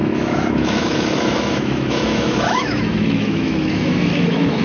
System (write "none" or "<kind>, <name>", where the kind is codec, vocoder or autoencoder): autoencoder, DAC-VAE